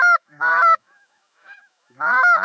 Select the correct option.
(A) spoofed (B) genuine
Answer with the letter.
A